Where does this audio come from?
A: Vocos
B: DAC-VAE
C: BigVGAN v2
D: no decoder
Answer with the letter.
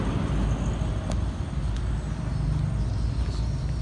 D